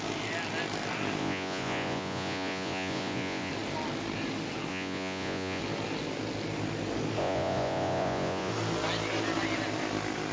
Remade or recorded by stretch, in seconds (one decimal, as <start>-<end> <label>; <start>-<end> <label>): 0.0-1.2 recorded; 1.2-3.5 remade; 3.5-4.7 recorded; 4.7-5.6 remade; 5.6-7.2 recorded; 7.2-8.5 remade; 8.5-10.3 recorded